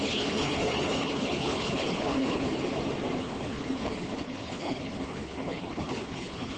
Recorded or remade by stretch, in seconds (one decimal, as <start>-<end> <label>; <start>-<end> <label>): 0.0-2.6 remade; 2.6-3.2 recorded; 3.2-6.6 remade